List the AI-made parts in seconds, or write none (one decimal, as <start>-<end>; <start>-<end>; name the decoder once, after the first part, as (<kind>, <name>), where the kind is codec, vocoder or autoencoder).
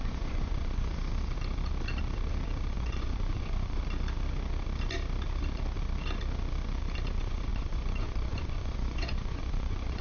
0.0-0.9 (vocoder, Vocos); 2.7-3.8; 7.1-10.0